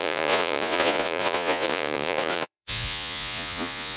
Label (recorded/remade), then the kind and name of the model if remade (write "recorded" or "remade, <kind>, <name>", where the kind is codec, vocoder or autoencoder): remade, vocoder, Vocos